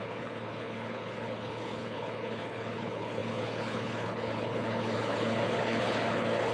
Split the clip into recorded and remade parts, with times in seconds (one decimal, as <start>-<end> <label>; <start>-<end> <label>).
0.0-6.5 remade

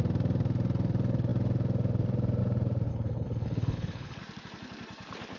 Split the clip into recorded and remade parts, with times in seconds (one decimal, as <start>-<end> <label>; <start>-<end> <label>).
0.0-2.9 recorded; 2.9-4.2 remade; 4.2-5.4 recorded

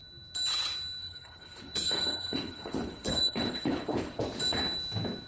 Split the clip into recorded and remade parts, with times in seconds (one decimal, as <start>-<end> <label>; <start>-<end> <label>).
0.0-1.0 recorded; 1.0-4.2 remade; 4.2-5.3 recorded

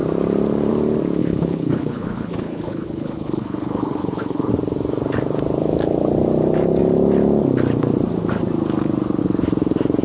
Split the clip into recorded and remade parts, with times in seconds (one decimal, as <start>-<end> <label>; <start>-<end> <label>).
0.0-1.2 recorded; 1.2-4.5 remade; 4.5-10.0 recorded